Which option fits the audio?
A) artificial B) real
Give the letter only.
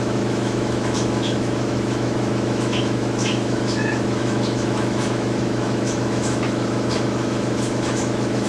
A